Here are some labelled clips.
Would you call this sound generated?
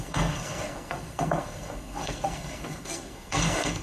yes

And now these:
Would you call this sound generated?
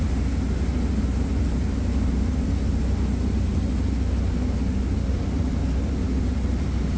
no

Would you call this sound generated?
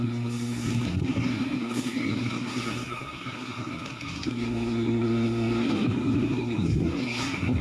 yes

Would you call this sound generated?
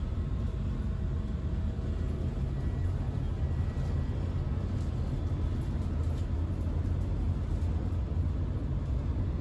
no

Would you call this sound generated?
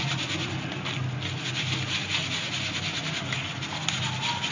no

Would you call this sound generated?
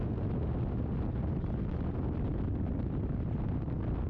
no